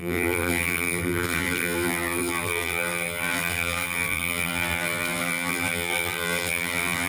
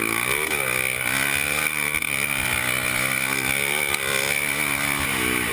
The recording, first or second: second